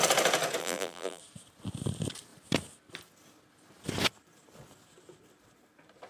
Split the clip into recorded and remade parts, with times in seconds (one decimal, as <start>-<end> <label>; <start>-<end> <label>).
0.0-0.6 recorded; 0.6-1.2 remade; 1.2-6.1 recorded